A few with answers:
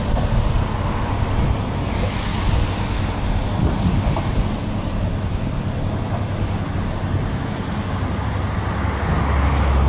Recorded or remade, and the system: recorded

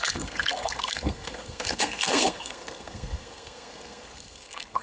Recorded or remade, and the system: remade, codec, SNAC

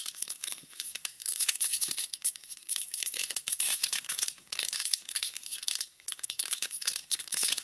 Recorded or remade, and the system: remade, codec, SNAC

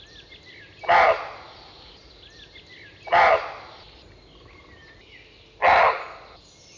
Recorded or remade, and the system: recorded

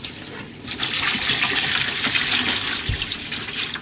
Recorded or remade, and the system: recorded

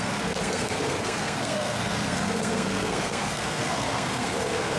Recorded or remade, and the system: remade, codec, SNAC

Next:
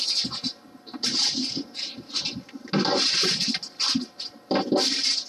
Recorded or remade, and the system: recorded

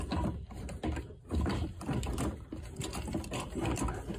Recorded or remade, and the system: recorded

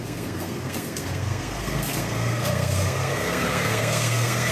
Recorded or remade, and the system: remade, codec, SNAC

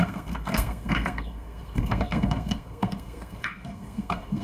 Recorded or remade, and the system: remade, codec, SNAC